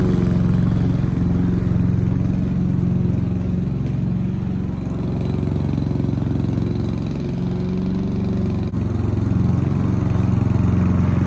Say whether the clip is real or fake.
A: real